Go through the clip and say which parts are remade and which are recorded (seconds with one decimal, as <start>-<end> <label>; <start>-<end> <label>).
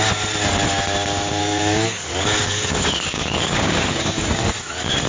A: 0.0-1.4 recorded; 1.4-4.3 remade; 4.3-5.1 recorded